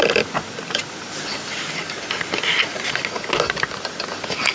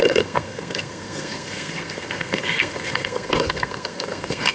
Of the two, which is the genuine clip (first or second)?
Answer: first